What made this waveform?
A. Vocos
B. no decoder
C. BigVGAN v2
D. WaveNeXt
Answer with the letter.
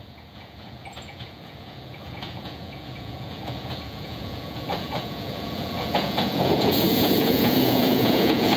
A